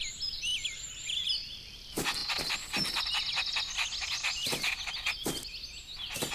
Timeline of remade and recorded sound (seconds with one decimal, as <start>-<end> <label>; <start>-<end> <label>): 0.0-6.3 recorded